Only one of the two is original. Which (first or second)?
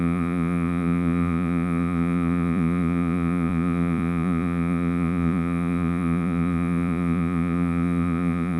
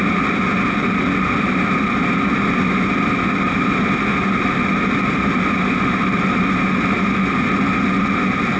second